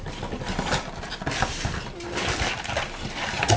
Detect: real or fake real